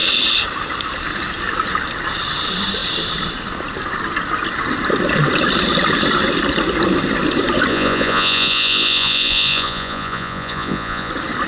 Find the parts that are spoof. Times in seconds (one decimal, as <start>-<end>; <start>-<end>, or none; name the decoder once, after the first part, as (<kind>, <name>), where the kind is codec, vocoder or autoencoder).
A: 7.7-11.1 (vocoder, Vocos)